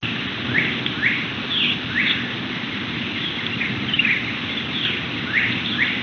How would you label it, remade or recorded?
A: recorded